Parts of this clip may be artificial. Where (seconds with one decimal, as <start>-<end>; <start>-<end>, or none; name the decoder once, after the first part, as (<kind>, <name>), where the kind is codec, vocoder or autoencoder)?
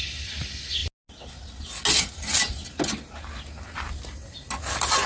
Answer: none